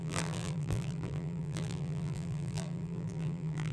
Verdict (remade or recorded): remade